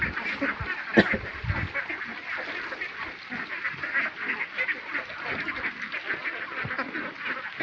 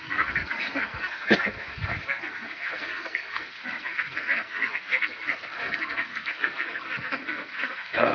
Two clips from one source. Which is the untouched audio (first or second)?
first